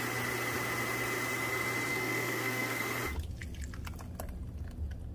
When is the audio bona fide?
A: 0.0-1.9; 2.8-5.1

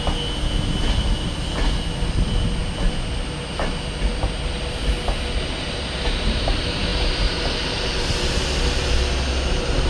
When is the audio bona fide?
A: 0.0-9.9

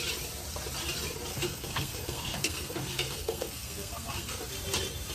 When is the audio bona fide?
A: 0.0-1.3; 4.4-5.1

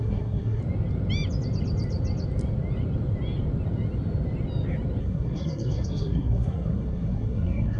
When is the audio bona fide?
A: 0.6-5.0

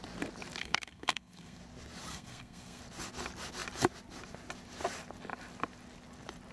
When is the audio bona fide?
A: 0.0-0.6; 1.6-2.1; 2.8-6.5

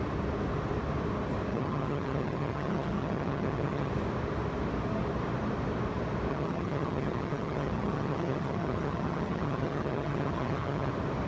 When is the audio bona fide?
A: 0.0-1.5; 3.9-6.3; 10.9-11.3